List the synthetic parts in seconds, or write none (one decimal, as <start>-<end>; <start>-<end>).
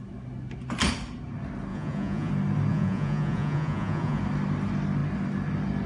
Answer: 1.7-2.3; 2.7-4.2